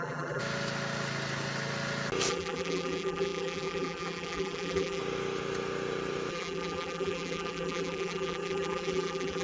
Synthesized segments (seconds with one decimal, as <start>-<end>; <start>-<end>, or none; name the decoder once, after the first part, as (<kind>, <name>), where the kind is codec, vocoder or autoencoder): 0.0-0.4 (vocoder, BigVGAN v2); 2.3-5.0; 6.3-9.4